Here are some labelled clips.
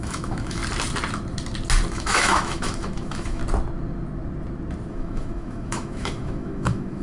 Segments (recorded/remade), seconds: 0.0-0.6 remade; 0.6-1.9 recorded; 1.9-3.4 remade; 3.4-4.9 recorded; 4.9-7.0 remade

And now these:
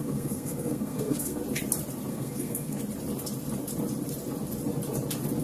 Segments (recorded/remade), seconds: 0.0-1.4 remade; 1.4-2.1 recorded; 2.1-2.8 remade; 2.8-5.4 recorded

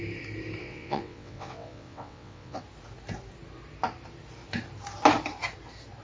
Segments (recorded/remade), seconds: 0.0-0.6 recorded; 0.6-2.6 remade; 2.6-6.0 recorded

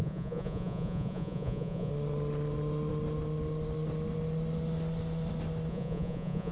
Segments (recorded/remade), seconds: 0.0-1.9 remade; 1.9-5.7 recorded; 5.7-6.5 remade

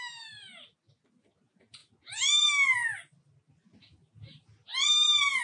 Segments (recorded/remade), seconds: 0.0-5.4 recorded

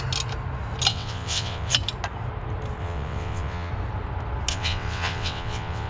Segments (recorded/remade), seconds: 0.0-0.9 recorded; 0.9-1.7 remade; 1.7-2.8 recorded; 2.8-3.7 remade; 3.7-4.5 recorded; 4.5-5.9 remade